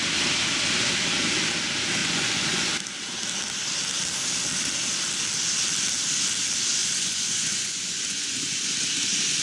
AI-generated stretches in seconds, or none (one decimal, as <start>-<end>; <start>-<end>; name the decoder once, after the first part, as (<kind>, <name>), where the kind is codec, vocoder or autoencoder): 2.0-2.7 (vocoder, Vocos); 6.8-8.7